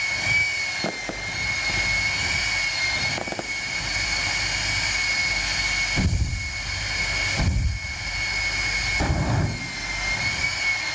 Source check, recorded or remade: recorded